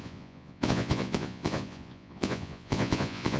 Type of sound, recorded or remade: remade